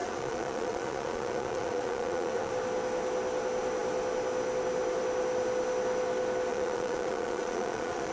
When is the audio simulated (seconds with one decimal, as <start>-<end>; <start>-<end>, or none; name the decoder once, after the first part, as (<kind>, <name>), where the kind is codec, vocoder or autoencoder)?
0.0-2.5 (vocoder, Vocos); 6.5-8.1